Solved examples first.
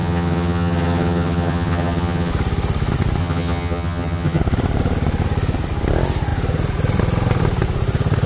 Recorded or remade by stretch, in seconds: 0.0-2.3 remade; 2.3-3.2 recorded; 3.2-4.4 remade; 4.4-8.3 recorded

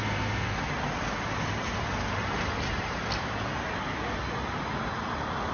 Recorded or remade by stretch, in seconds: 0.0-0.6 remade; 0.6-5.5 recorded

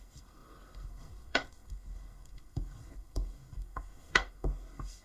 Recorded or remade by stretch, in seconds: 0.0-5.0 remade

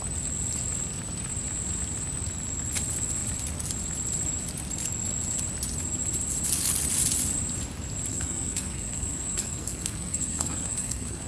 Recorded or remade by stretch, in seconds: 0.0-8.1 recorded; 8.1-11.3 remade